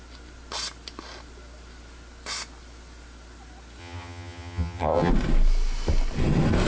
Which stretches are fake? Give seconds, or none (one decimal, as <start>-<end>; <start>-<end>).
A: 3.8-5.1